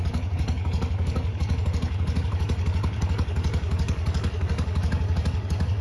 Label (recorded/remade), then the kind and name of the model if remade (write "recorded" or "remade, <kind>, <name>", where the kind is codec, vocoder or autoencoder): remade, codec, DAC